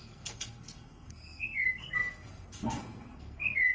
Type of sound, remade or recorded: remade